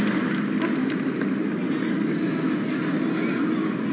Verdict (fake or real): real